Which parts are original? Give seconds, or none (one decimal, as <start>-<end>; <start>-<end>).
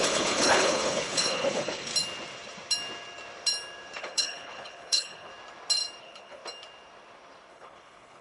1.9-4.0; 5.3-6.0; 6.4-7.5